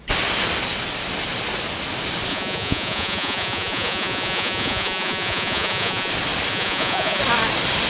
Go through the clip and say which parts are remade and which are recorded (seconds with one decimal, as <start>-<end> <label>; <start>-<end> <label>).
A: 0.0-2.3 recorded; 2.3-6.1 remade; 6.1-6.5 recorded; 6.5-7.2 remade; 7.2-7.9 recorded